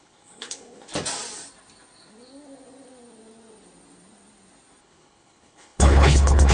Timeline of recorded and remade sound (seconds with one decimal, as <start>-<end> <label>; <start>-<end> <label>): 0.0-0.9 remade; 0.9-4.8 recorded; 4.8-6.5 remade